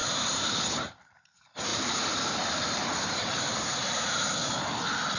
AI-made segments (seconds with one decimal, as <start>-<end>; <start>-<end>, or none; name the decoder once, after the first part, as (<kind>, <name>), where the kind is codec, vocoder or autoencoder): 0.0-0.6 (vocoder, BigVGAN v2); 1.7-4.8